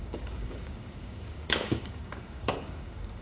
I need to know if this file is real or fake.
fake